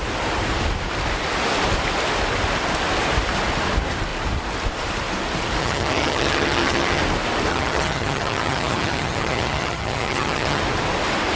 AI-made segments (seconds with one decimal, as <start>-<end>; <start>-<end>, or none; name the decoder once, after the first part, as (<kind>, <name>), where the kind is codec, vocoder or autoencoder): 5.6-7.0 (vocoder, HiFi-GAN); 7.5-10.6